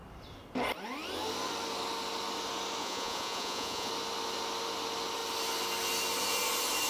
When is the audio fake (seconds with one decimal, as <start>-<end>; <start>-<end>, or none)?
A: 2.8-3.9